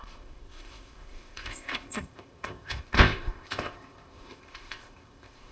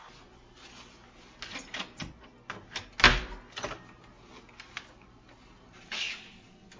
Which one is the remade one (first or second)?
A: first